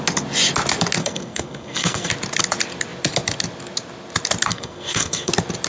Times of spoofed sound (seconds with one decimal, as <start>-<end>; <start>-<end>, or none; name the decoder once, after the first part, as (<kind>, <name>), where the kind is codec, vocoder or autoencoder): 1.0-2.1 (codec, SNAC); 4.5-5.3